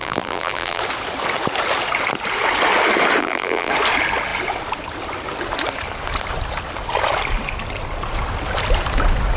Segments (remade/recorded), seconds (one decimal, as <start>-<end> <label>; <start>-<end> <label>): 0.0-0.8 remade; 0.8-3.2 recorded; 3.2-3.7 remade; 3.7-9.4 recorded